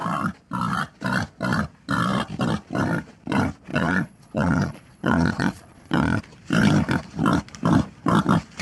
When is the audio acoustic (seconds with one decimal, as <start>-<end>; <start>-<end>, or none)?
0.0-3.7; 6.2-8.6